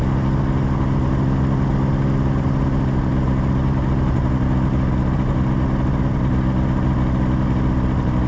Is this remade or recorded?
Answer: recorded